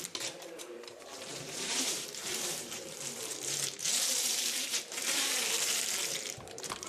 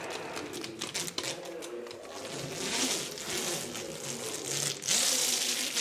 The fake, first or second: first